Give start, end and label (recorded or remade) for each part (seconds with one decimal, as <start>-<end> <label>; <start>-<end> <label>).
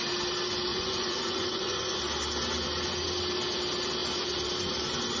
0.0-0.7 recorded; 0.7-2.0 remade; 2.0-5.2 recorded